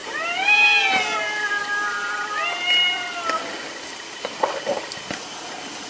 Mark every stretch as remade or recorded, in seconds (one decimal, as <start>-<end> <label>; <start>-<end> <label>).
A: 0.0-1.6 recorded; 1.6-2.4 remade; 2.4-4.7 recorded; 4.7-5.9 remade